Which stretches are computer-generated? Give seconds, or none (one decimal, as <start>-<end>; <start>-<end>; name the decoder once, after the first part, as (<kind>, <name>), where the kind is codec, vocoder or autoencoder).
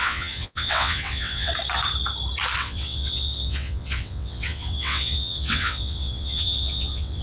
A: 0.0-1.5 (vocoder, WaveNeXt); 2.6-7.2